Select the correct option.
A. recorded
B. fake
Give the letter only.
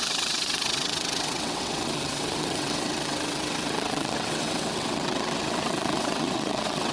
B